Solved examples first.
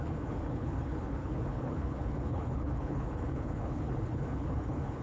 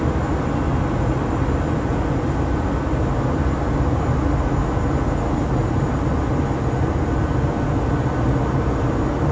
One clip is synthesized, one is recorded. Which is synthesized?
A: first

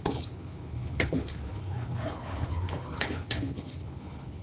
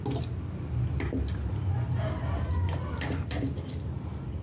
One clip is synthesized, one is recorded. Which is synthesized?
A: first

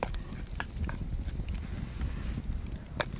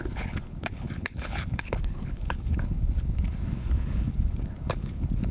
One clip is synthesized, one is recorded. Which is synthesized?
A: second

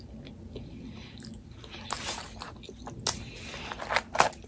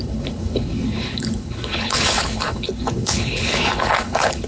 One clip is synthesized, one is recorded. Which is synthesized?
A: second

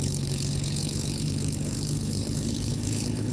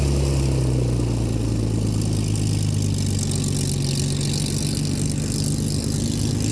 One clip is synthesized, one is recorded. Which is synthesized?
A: first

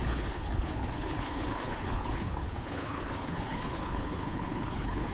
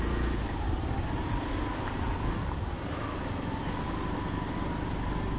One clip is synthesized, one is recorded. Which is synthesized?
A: first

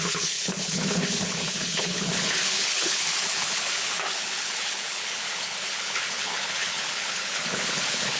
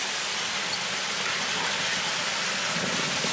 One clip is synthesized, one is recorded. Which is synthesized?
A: first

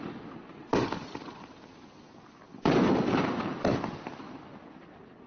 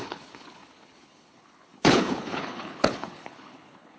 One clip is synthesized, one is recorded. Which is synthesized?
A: second